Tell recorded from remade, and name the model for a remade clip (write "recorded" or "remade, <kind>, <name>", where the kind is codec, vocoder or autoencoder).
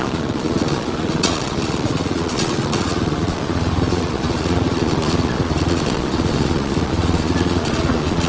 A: remade, vocoder, Vocos